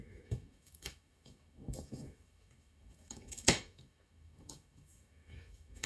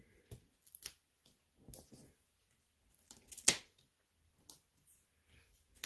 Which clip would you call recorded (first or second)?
second